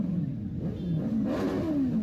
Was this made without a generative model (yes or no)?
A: yes